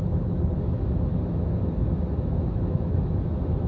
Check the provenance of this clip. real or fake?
fake